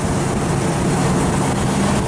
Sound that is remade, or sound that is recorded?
recorded